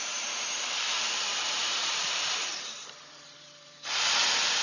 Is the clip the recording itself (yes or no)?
no